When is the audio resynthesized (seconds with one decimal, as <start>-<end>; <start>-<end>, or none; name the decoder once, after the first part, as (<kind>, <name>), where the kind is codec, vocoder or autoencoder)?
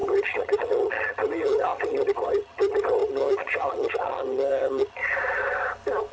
0.0-5.0 (vocoder, HiFi-GAN)